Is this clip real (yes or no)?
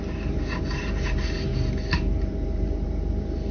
no